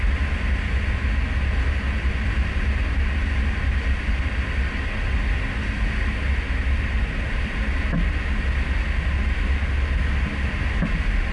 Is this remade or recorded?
recorded